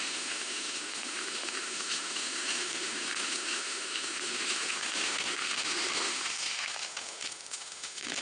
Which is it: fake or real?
fake